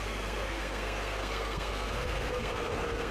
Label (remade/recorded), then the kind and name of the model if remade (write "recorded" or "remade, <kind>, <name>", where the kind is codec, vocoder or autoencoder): remade, codec, SNAC